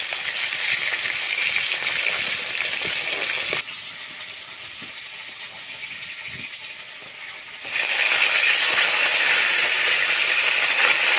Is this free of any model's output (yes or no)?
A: yes